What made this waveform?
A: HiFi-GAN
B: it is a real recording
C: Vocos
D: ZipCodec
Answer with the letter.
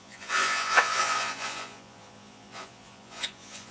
C